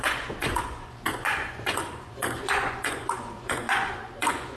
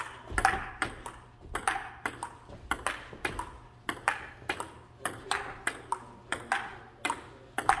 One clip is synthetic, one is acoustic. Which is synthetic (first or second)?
first